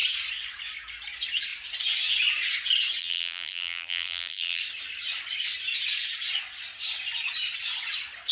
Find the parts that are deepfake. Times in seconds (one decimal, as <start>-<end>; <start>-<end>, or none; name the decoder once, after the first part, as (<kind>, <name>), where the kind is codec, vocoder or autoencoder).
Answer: 3.0-4.6 (vocoder, BigVGAN v2)